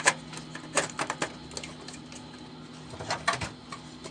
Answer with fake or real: real